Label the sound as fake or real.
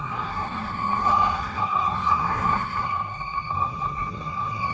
fake